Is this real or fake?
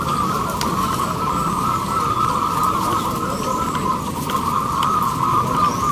real